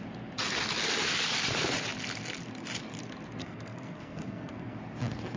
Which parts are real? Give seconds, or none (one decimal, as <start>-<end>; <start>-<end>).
0.0-3.4; 4.8-5.4